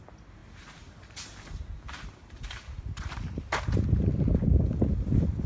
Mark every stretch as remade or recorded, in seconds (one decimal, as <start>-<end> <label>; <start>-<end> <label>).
0.0-0.4 recorded; 0.4-3.7 remade; 3.7-5.5 recorded